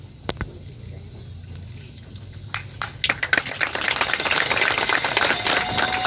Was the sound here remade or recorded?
recorded